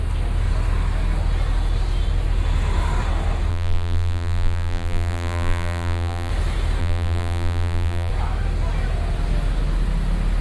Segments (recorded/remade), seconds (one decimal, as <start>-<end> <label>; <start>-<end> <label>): 0.0-3.5 recorded; 3.5-6.3 remade; 6.3-6.8 recorded; 6.8-8.1 remade; 8.1-10.4 recorded

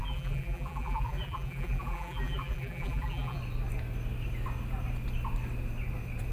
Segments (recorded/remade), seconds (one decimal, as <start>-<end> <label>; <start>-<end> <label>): 0.0-3.4 remade; 3.4-6.3 recorded